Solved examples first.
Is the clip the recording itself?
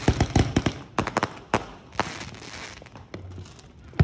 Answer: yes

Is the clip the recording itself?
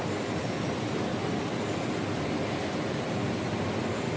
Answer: yes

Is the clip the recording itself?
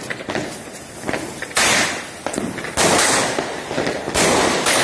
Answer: yes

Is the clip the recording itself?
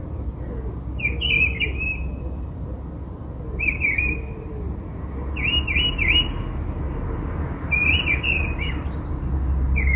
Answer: yes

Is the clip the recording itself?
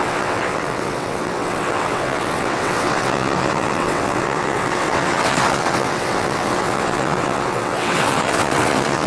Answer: no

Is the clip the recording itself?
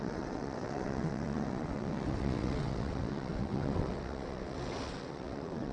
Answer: no